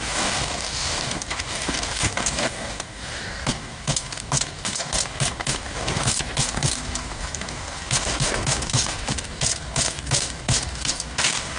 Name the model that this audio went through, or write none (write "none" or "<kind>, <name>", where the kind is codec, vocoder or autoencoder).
codec, DAC